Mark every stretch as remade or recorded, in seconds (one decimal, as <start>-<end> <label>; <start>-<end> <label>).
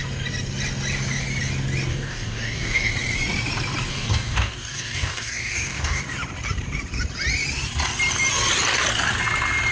0.0-1.9 recorded; 1.9-2.9 remade; 2.9-3.9 recorded; 3.9-6.0 remade; 6.0-9.7 recorded